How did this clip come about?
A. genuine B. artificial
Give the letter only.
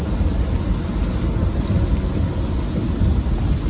A